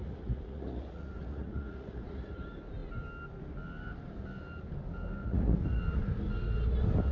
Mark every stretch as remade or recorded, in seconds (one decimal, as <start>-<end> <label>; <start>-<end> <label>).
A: 0.0-2.4 remade; 2.4-5.2 recorded; 5.2-5.8 remade; 5.8-7.1 recorded